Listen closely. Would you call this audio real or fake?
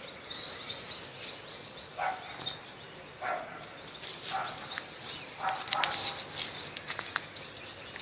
real